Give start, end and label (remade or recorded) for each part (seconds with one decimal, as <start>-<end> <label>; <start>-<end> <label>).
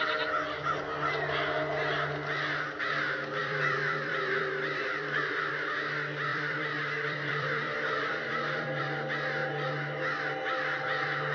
0.0-3.4 recorded; 3.4-5.5 remade; 5.5-6.3 recorded; 6.3-8.8 remade; 8.8-11.3 recorded